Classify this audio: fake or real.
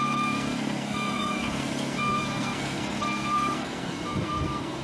fake